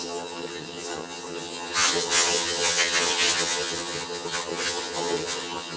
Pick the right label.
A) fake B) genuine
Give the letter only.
A